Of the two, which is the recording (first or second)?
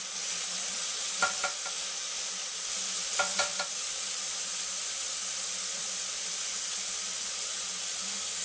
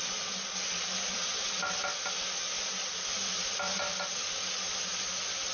second